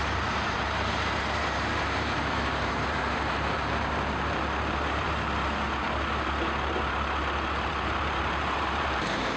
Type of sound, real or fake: fake